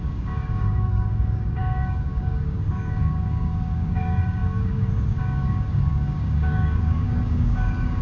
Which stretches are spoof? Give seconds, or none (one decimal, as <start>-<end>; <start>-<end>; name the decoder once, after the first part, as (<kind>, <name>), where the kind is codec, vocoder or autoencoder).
0.0-8.0 (codec, DAC)